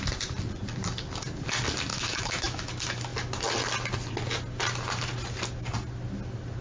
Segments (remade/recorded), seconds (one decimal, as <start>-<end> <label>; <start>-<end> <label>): 0.0-1.9 recorded; 1.9-2.7 remade; 2.7-6.6 recorded